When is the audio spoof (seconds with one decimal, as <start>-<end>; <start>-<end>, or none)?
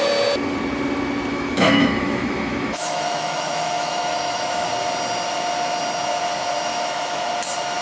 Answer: 1.3-4.7; 6.7-7.3